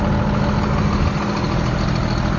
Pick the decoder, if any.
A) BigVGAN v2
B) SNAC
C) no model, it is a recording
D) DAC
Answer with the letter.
C